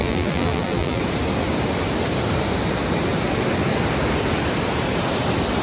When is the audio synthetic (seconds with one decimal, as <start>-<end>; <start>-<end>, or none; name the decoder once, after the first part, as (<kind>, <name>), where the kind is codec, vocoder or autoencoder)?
0.0-1.0 (vocoder, BigVGAN v2)